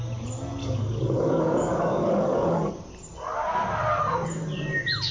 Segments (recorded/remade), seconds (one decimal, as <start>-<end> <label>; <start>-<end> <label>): 0.0-0.6 recorded; 0.6-2.7 remade; 2.7-5.1 recorded